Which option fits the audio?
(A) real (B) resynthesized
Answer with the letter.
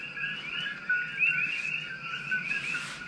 A